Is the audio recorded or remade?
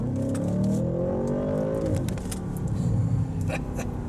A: recorded